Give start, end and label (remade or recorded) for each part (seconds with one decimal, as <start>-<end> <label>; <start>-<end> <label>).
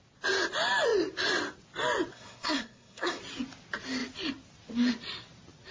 0.0-2.1 recorded; 2.1-3.2 remade; 3.2-5.7 recorded